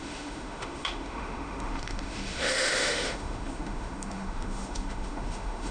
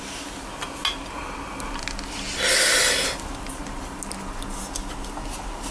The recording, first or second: second